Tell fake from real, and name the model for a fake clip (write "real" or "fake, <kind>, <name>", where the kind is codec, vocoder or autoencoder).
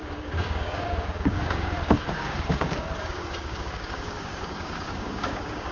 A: fake, codec, DAC